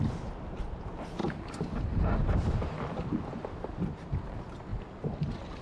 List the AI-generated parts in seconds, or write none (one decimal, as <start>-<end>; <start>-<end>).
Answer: none